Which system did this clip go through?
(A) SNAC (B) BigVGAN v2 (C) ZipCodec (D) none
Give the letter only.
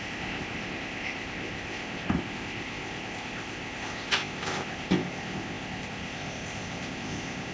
C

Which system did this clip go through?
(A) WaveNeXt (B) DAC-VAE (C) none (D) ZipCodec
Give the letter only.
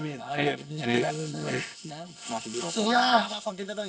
D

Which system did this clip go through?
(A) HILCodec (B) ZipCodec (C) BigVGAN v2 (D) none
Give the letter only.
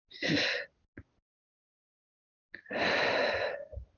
D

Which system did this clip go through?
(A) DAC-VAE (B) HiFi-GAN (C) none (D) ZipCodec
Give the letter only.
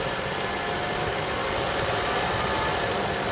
C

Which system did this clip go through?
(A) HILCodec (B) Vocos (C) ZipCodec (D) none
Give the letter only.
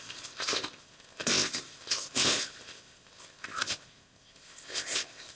C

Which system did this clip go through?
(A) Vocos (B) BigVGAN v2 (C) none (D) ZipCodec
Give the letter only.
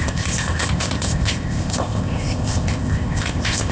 D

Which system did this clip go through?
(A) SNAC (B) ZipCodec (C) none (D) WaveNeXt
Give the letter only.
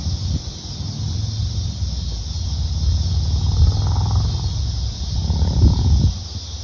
C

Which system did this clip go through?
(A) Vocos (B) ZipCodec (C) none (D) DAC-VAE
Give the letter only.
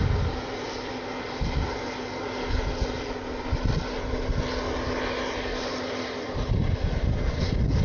C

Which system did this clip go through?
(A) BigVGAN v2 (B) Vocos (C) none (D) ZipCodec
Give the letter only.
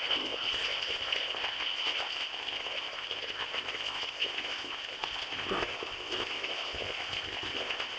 D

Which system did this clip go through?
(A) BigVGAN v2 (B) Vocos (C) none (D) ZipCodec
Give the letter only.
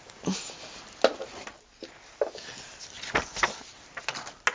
C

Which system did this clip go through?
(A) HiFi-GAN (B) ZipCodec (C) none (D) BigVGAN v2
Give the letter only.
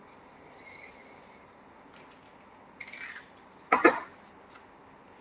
C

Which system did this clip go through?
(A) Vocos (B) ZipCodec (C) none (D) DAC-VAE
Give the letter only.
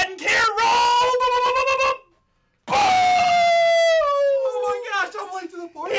C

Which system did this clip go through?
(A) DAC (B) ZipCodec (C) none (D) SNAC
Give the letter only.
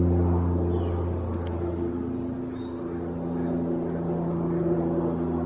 C